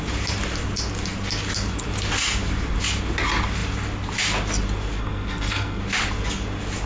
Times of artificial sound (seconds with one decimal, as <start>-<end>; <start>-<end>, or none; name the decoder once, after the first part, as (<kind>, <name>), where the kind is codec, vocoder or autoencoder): 5.0-5.8 (codec, SNAC)